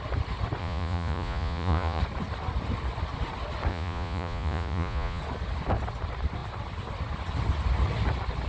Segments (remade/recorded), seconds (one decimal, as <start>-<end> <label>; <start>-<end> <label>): 0.0-0.6 recorded; 0.6-2.0 remade; 2.0-3.7 recorded; 3.7-5.2 remade; 5.2-8.5 recorded